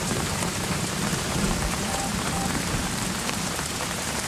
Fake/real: fake